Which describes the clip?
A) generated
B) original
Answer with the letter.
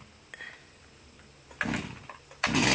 B